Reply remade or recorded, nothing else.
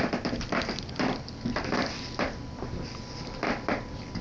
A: recorded